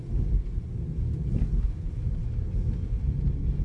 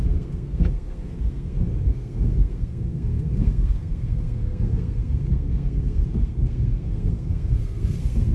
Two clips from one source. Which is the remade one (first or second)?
second